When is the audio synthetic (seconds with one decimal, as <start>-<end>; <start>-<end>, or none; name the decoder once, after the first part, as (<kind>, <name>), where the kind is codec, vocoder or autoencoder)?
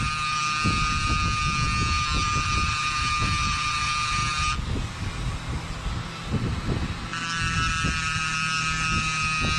none